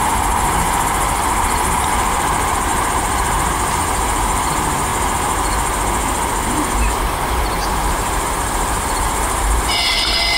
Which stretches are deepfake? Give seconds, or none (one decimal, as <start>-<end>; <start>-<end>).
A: 0.0-4.9; 6.9-10.4

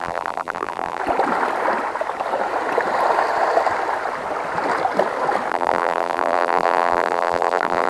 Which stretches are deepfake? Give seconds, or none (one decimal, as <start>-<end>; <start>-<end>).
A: 0.0-1.0; 5.5-7.9